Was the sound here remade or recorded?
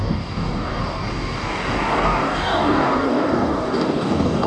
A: remade